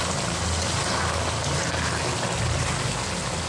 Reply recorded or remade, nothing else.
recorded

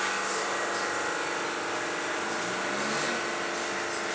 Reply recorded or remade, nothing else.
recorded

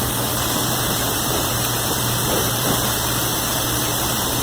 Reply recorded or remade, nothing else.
remade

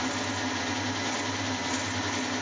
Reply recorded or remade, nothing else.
recorded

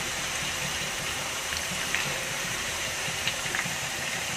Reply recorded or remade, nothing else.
remade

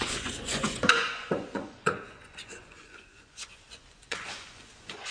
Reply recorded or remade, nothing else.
remade